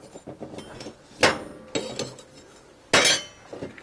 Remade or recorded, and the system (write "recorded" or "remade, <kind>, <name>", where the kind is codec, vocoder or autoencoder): recorded